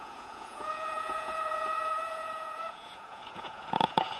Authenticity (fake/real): fake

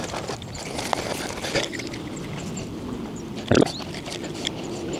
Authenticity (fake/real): real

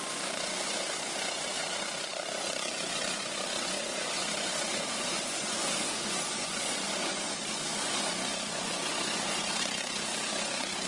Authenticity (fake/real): fake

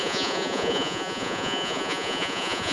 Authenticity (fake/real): fake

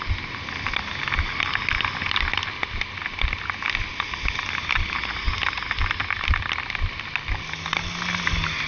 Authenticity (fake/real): real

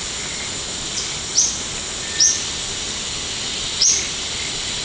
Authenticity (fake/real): real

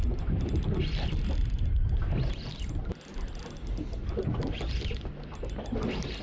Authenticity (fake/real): real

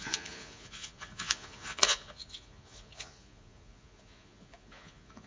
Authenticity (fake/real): fake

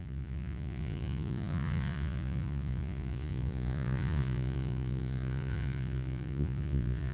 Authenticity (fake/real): fake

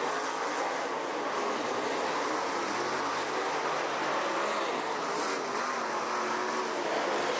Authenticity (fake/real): real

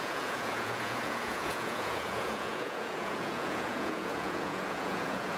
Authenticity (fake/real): fake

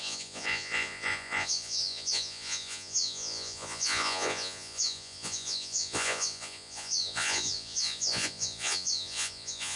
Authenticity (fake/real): fake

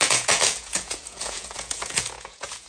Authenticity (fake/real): fake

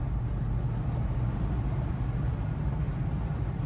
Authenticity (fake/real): real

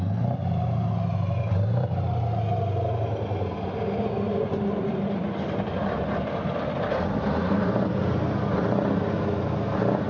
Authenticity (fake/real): real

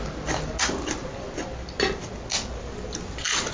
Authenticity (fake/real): real